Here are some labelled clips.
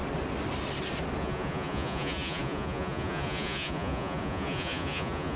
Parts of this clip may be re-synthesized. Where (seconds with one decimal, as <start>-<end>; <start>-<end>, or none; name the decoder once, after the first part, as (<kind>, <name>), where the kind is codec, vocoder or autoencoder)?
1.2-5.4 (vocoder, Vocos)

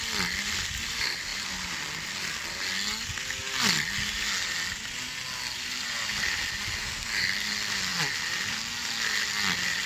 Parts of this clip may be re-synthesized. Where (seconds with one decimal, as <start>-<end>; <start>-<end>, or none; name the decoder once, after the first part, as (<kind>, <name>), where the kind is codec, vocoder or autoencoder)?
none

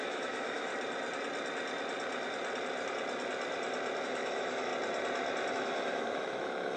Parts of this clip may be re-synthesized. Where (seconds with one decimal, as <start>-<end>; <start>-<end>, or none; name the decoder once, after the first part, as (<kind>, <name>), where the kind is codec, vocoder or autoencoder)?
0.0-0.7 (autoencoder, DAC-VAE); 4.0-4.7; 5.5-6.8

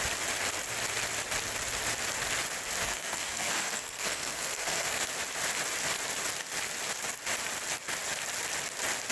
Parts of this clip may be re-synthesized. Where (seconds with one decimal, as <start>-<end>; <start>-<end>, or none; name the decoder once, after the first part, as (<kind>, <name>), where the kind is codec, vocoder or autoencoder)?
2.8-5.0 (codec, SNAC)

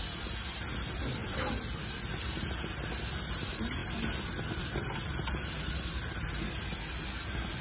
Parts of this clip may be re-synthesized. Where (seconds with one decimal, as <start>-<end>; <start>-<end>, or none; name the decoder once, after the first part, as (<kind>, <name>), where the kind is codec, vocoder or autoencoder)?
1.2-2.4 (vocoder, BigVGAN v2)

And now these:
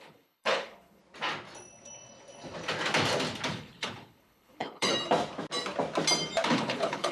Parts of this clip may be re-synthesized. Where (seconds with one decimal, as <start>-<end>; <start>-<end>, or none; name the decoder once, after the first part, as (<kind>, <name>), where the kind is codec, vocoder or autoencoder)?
0.0-1.0 (codec, HILCodec); 3.5-4.9; 6.5-7.1